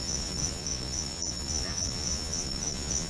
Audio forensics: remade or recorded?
remade